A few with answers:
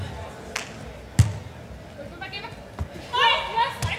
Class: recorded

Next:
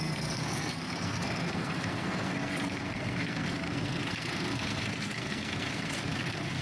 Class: remade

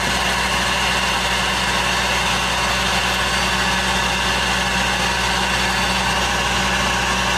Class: recorded